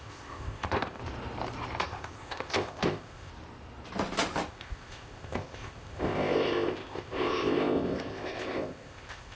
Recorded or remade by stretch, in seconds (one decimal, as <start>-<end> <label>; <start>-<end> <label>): 0.0-1.0 remade; 1.0-1.8 recorded; 1.8-3.3 remade; 3.3-4.5 recorded; 4.5-9.4 remade

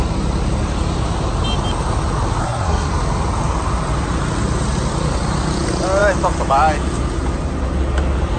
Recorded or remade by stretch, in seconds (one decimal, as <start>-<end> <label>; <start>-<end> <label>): 0.0-2.4 recorded; 2.4-2.9 remade; 2.9-8.4 recorded

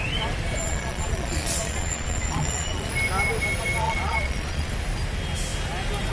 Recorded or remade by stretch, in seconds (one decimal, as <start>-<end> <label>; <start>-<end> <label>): 0.0-0.6 recorded; 0.6-2.9 remade; 2.9-3.8 recorded; 3.8-4.7 remade; 4.7-6.1 recorded

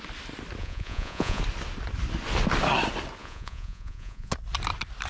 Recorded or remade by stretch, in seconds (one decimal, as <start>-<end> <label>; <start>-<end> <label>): 0.0-0.6 recorded; 0.6-1.4 remade; 1.4-3.2 recorded; 3.2-4.3 remade; 4.3-5.1 recorded